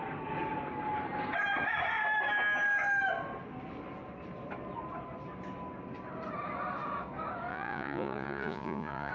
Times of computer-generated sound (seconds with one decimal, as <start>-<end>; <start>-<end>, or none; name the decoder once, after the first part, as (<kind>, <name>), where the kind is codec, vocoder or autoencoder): 7.5-9.1 (vocoder, Vocos)